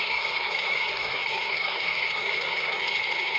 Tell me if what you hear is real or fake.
fake